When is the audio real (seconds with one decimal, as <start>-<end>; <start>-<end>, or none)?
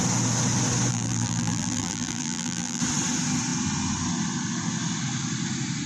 0.0-0.9; 2.8-5.9